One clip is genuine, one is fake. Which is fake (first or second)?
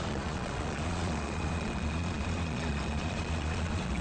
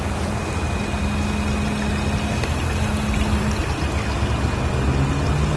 first